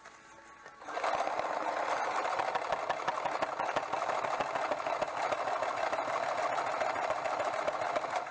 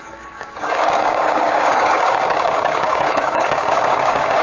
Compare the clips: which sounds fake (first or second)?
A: second